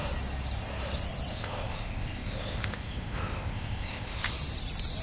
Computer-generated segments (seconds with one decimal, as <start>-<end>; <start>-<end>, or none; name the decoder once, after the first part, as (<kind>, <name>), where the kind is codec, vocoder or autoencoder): 1.3-4.3 (codec, ZipCodec)